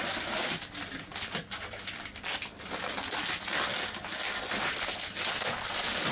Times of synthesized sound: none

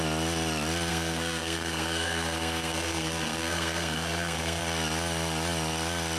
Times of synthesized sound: 0.9-4.6

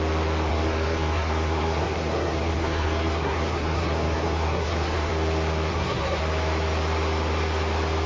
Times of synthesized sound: 0.5-5.1; 5.7-6.2